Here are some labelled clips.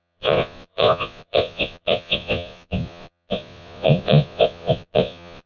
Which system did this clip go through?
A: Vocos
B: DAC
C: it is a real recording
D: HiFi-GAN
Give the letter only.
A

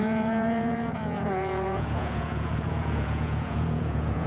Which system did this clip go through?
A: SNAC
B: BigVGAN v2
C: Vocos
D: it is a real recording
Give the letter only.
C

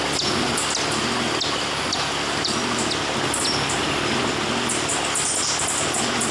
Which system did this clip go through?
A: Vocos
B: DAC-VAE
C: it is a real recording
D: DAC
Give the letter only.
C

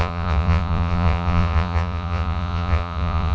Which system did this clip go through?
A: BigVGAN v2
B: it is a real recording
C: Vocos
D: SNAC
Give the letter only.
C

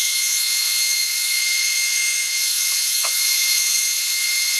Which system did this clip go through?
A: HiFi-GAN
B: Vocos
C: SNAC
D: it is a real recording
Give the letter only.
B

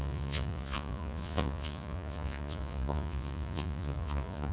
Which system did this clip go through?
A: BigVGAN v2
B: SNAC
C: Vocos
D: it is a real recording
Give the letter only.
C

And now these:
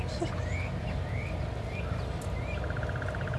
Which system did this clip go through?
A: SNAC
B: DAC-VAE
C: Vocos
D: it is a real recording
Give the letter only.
D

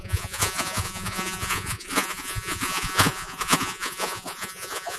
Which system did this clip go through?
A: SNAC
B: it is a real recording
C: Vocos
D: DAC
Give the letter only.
C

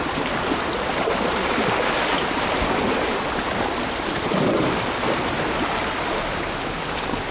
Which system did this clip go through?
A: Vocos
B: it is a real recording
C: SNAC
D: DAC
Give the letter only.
B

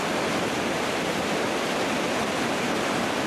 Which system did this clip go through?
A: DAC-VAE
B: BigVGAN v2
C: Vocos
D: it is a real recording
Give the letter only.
D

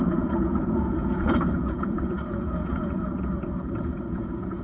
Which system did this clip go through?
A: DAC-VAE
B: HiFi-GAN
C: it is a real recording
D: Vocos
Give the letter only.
D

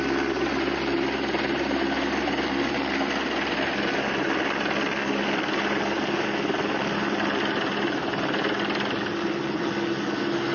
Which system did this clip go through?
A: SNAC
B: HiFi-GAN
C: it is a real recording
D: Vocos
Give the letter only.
C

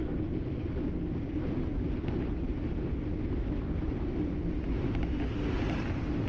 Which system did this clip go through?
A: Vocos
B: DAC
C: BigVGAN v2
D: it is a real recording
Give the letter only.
D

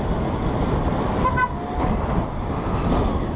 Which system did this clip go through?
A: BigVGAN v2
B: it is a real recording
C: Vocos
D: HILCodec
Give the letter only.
B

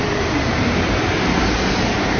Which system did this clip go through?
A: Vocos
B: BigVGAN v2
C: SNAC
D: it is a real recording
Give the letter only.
D